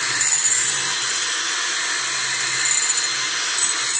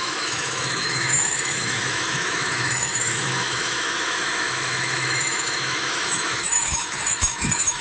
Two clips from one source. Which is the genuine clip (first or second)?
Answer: first